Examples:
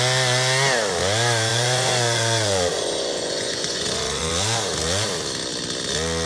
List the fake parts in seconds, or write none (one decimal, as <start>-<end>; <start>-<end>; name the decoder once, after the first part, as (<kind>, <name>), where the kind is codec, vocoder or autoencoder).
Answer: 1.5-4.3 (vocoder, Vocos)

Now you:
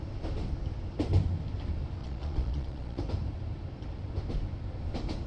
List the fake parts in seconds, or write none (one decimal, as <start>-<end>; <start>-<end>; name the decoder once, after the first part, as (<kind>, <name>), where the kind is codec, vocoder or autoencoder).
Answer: 2.0-3.0 (vocoder, Vocos)

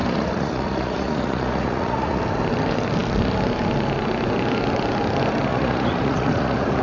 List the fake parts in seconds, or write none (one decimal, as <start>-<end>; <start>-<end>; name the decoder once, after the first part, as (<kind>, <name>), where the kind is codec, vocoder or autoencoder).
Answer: 0.0-2.2 (vocoder, Vocos); 5.5-6.8

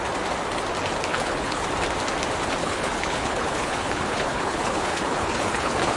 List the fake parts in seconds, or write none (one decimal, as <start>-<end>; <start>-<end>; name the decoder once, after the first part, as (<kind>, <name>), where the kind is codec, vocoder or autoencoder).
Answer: 1.1-1.7 (codec, HILCodec); 2.6-6.0

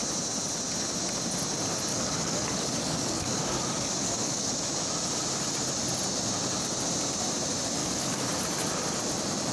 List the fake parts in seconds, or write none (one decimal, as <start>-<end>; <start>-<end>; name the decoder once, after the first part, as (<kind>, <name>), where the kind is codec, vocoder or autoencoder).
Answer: 1.9-4.5 (codec, DAC); 7.8-8.3

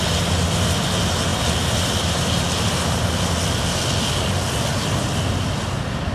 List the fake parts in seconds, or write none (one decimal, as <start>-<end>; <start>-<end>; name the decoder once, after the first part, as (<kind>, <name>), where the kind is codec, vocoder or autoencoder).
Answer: none